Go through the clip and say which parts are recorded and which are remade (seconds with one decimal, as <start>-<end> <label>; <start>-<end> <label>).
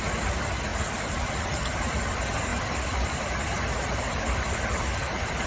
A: 0.0-5.5 remade